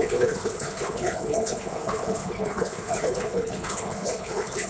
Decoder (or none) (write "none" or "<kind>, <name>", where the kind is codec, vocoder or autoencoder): codec, HILCodec